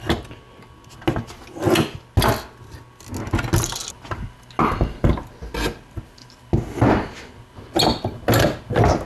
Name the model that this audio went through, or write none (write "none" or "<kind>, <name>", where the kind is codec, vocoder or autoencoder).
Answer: none